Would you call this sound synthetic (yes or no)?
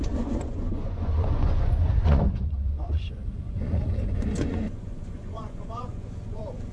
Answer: yes